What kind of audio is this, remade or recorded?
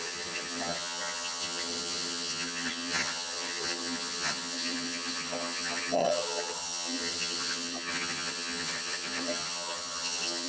remade